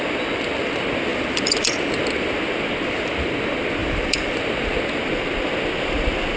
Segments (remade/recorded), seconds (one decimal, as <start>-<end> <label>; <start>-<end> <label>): 0.0-1.1 recorded; 1.1-2.0 remade; 2.0-3.8 recorded; 3.8-4.4 remade; 4.4-6.4 recorded